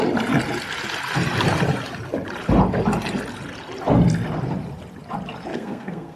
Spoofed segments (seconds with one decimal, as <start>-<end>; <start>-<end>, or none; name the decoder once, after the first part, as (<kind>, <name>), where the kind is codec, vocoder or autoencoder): 5.5-6.2 (codec, SNAC)